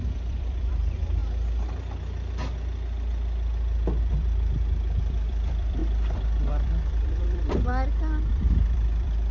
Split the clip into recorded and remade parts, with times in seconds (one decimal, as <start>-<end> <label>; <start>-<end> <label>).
0.0-1.2 remade; 1.2-4.0 recorded; 4.0-7.7 remade; 7.7-8.3 recorded; 8.3-9.3 remade